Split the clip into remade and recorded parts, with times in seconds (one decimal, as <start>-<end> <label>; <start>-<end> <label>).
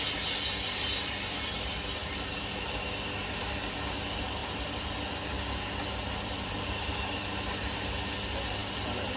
0.0-2.0 recorded; 2.0-2.6 remade; 2.6-9.2 recorded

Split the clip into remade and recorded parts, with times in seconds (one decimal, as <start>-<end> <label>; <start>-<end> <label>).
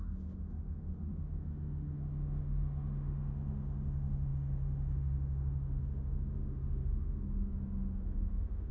0.0-8.7 remade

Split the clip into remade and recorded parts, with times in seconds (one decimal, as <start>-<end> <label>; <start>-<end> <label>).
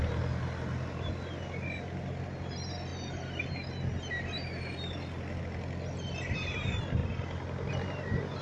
0.0-8.4 recorded